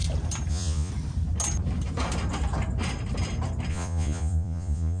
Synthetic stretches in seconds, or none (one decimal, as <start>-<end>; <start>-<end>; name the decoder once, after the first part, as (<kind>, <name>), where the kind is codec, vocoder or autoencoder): 0.5-0.9 (vocoder, Vocos); 3.7-5.0